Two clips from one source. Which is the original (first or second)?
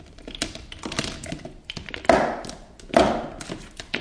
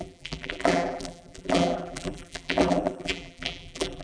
first